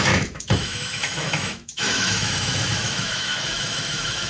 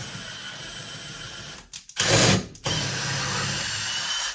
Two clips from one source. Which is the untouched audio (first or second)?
second